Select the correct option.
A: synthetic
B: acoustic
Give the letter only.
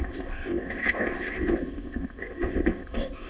A